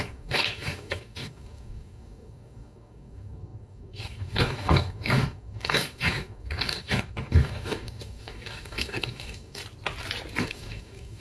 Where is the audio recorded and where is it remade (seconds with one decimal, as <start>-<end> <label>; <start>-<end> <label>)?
0.0-9.6 remade; 9.6-10.4 recorded; 10.4-11.2 remade